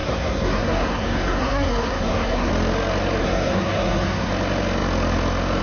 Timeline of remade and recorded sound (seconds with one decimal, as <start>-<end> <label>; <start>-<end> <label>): 0.0-2.5 remade; 2.5-3.2 recorded; 3.2-4.3 remade; 4.3-5.6 recorded